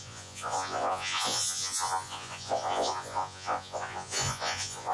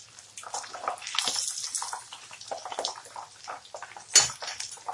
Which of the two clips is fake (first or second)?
first